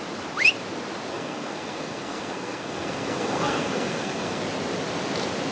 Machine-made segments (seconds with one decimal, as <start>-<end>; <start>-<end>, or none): 1.1-4.4